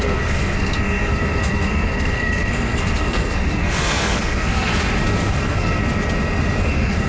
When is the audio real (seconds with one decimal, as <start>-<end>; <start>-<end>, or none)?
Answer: 4.7-5.3; 5.8-6.6